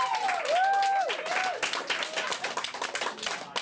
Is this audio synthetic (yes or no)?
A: no